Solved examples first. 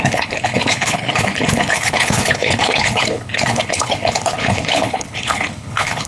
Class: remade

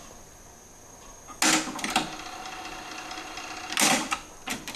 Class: recorded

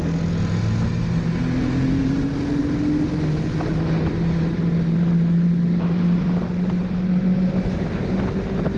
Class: recorded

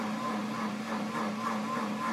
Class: recorded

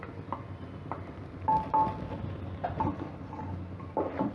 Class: recorded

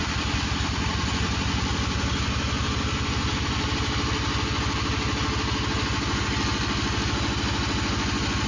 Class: recorded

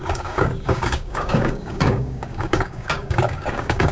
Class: remade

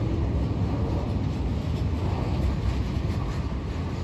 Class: recorded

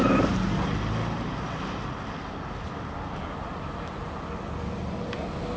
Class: recorded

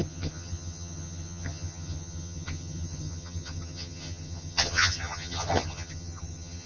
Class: remade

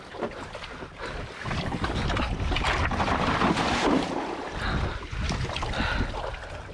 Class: recorded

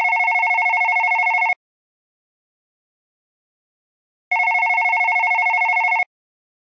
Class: recorded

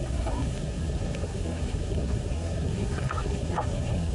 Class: remade